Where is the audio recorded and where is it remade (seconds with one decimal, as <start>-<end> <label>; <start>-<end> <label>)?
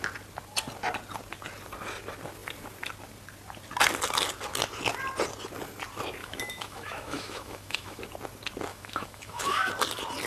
0.0-6.2 recorded; 6.2-8.0 remade; 8.0-8.7 recorded; 8.7-9.7 remade; 9.7-10.3 recorded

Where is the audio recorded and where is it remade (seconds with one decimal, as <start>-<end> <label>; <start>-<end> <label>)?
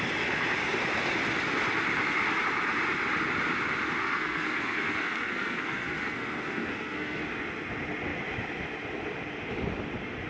0.0-4.0 recorded; 4.0-7.2 remade; 7.2-10.3 recorded